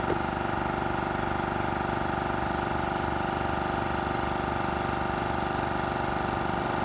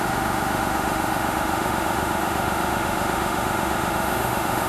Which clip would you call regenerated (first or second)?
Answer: second